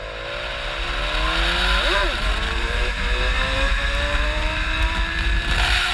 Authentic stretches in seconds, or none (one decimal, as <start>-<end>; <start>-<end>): 0.0-2.0; 5.5-5.9